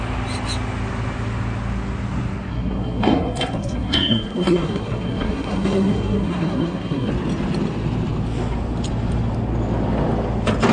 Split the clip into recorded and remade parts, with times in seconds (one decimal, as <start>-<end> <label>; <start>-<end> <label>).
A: 0.0-2.5 recorded; 2.5-7.1 remade; 7.1-10.7 recorded